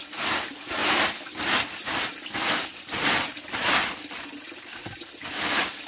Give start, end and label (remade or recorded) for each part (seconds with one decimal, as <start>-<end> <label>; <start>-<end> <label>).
0.0-5.9 recorded